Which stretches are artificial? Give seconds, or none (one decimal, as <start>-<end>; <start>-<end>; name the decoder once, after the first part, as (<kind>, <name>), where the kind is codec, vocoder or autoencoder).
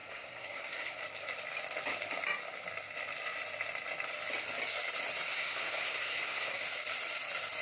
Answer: 0.0-1.0 (codec, SNAC); 5.3-6.6